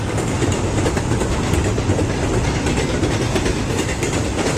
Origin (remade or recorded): recorded